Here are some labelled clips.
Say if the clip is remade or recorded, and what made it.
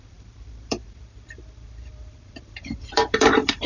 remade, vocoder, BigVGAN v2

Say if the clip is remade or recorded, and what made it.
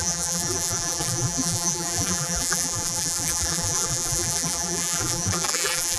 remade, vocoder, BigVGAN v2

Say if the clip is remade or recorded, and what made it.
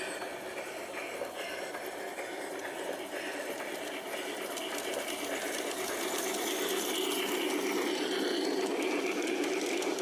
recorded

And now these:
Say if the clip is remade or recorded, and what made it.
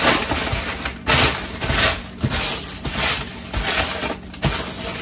recorded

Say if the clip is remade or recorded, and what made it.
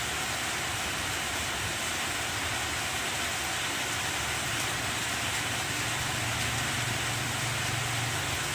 recorded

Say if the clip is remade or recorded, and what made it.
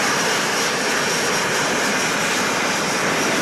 remade, vocoder, BigVGAN v2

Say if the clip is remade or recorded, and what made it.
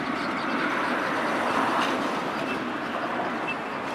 recorded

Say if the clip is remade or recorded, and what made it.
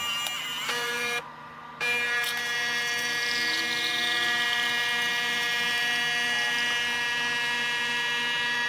remade, vocoder, BigVGAN v2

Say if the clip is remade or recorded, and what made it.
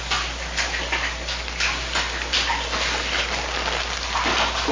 remade, vocoder, BigVGAN v2